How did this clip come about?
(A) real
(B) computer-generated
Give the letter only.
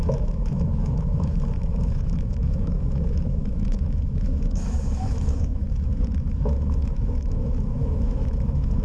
B